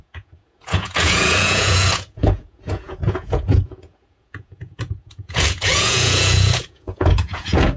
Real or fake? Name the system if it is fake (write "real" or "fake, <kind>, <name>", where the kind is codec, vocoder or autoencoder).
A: fake, vocoder, Vocos